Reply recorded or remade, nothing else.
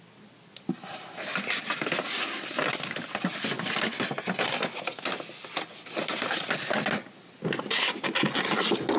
recorded